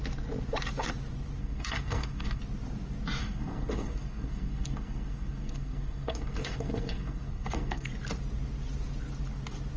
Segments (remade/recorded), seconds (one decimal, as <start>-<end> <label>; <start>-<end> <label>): 0.0-1.4 recorded; 1.4-2.4 remade; 2.4-3.2 recorded; 3.2-7.9 remade; 7.9-9.8 recorded